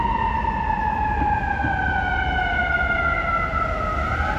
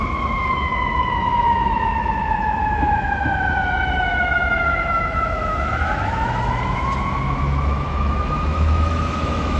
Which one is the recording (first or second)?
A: first